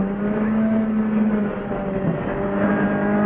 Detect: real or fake real